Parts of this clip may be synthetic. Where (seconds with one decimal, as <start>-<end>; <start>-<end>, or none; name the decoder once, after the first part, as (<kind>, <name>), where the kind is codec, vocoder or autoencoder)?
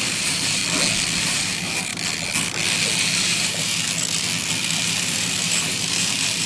0.0-0.6 (vocoder, BigVGAN v2); 1.2-1.9; 3.0-3.8; 4.8-6.5